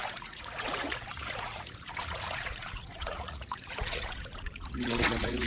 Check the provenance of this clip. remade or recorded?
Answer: remade